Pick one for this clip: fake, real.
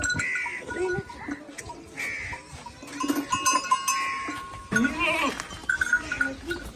real